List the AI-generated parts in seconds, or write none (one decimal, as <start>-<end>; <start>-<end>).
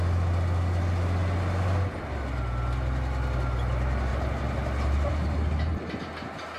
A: none